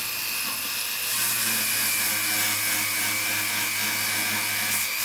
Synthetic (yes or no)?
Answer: no